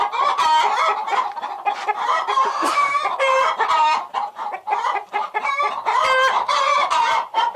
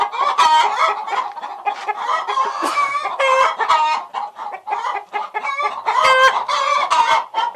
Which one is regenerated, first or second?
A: first